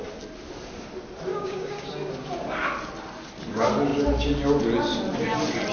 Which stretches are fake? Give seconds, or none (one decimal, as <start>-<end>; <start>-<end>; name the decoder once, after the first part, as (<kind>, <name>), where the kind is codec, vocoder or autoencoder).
1.3-1.9 (codec, DAC)